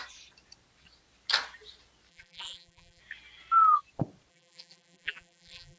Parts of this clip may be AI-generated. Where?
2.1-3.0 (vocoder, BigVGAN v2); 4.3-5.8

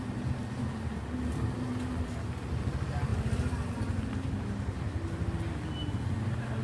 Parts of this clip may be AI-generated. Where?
none

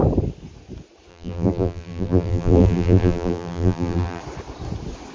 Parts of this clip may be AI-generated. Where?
1.1-4.2 (vocoder, BigVGAN v2)

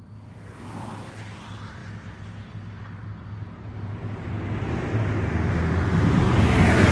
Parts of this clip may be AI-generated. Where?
3.7-5.0 (vocoder, BigVGAN v2)

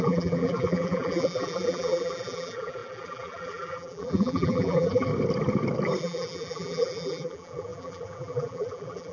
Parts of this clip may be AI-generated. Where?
0.0-5.1 (vocoder, BigVGAN v2); 6.0-9.1

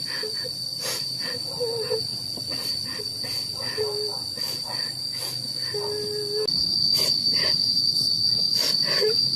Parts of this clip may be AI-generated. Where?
0.7-1.3 (vocoder, BigVGAN v2)

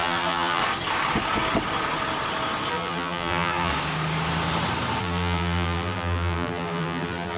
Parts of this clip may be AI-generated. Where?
0.0-0.6 (vocoder, BigVGAN v2); 2.7-3.7; 5.0-7.4